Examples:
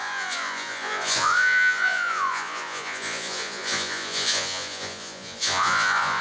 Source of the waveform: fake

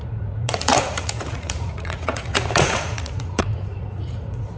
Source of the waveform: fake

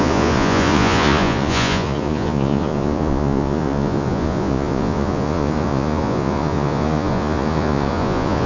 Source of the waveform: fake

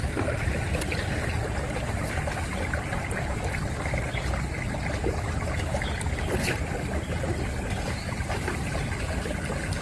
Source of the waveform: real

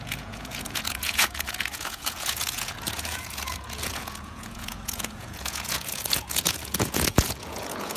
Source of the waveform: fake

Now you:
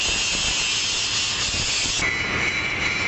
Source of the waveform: real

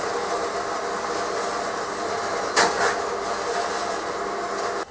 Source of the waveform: real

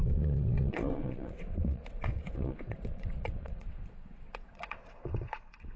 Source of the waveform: fake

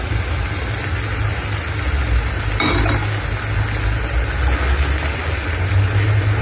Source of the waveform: real